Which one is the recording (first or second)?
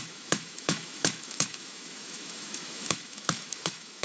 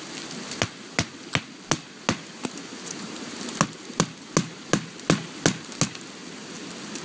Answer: second